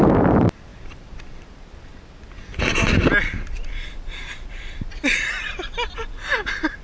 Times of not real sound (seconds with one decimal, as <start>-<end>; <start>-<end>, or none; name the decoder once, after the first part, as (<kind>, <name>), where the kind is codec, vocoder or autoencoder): none

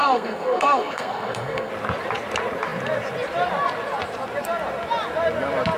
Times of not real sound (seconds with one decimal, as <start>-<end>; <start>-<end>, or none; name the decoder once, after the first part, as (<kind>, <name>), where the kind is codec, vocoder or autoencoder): 0.0-1.7 (codec, SNAC)

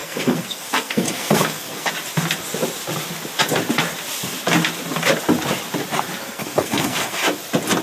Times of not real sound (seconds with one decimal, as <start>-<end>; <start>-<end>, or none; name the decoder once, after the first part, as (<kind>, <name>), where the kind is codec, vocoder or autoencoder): 0.0-1.9 (codec, SNAC); 6.2-7.2

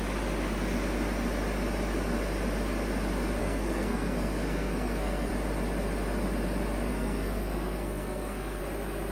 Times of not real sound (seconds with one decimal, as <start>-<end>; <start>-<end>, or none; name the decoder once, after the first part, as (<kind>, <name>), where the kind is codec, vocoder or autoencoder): 3.4-5.3 (codec, SNAC); 6.9-8.6

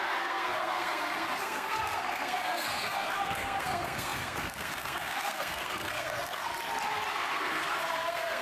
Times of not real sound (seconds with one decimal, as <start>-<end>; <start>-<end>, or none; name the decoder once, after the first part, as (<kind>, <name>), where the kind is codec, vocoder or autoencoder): 0.0-6.5 (codec, SNAC); 7.1-8.4

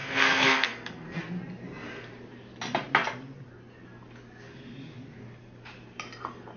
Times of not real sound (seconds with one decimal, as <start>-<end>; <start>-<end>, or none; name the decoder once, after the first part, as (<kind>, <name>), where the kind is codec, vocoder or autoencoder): 0.0-1.2 (codec, SNAC)

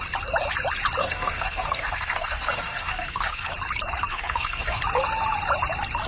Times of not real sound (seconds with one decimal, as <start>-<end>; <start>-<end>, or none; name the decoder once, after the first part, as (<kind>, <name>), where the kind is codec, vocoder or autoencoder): 1.0-3.5 (codec, SNAC); 4.1-4.8

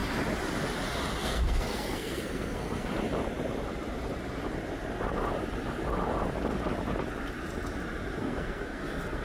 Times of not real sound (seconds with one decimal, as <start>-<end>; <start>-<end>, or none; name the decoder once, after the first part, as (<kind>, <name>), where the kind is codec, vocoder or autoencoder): 1.2-2.9 (codec, SNAC); 8.2-9.2